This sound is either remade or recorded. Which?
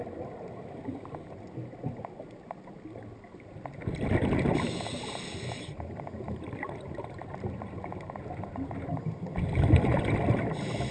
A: recorded